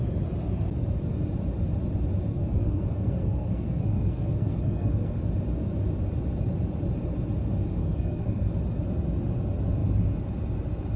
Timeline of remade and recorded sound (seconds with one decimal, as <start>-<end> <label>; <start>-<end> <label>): 0.0-2.3 recorded; 2.3-5.3 remade; 5.3-7.8 recorded; 7.8-8.5 remade; 8.5-11.0 recorded